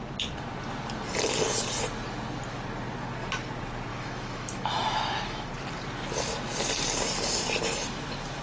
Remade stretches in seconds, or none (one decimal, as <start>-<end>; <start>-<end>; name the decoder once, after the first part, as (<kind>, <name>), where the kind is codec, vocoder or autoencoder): 3.9-5.5 (autoencoder, DAC-VAE)